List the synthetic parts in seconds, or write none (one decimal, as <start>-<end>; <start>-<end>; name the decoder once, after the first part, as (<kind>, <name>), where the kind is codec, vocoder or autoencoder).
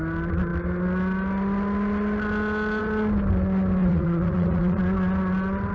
3.8-4.8 (vocoder, Vocos)